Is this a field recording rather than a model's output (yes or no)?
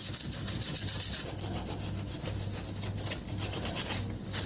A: yes